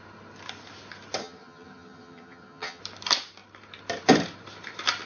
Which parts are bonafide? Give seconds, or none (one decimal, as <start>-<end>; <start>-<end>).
0.0-1.2; 2.8-5.0